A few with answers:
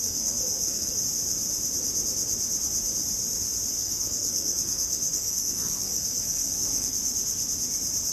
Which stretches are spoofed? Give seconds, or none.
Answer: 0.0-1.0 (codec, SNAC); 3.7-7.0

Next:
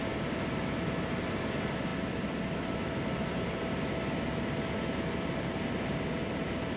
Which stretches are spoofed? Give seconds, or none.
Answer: none

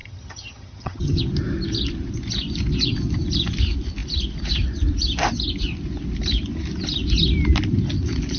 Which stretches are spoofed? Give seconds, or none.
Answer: 0.0-1.2 (vocoder, HiFi-GAN)

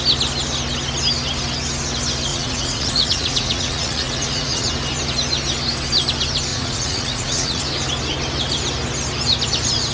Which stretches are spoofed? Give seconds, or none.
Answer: 2.3-4.7 (vocoder, Vocos); 6.5-7.6

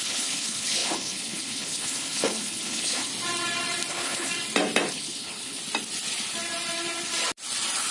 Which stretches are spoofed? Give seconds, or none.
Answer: 0.0-3.1 (codec, HILCodec); 3.9-4.3; 4.9-5.6

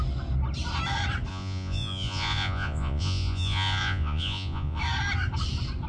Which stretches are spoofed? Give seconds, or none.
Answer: 1.3-4.8 (vocoder, Vocos)

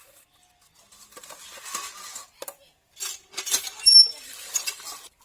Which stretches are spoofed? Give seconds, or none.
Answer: none

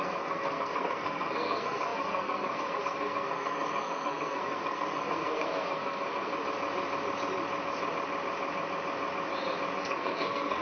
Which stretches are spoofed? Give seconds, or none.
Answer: 0.0-6.3 (codec, SNAC); 9.8-10.6